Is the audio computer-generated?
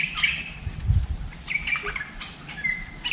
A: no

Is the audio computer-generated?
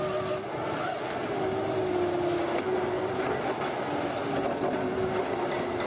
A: no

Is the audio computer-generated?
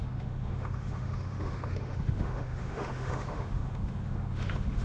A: yes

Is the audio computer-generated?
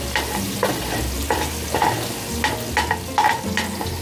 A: no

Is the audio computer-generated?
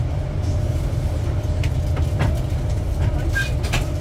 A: no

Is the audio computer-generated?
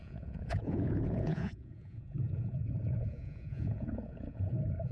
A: yes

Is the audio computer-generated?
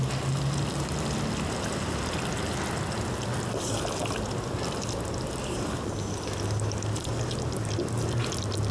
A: no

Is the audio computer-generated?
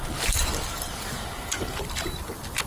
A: yes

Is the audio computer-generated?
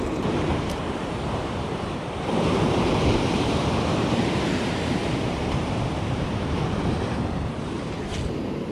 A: yes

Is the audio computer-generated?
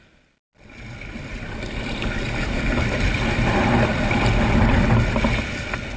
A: no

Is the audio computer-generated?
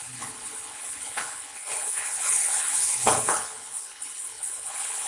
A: yes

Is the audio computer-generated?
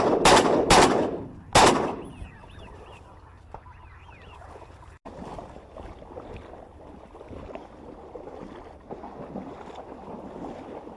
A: no